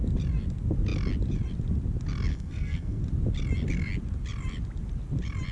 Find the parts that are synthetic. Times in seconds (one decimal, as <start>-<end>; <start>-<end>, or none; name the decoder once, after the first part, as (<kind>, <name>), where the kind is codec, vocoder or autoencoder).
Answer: 2.3-3.0 (codec, SNAC)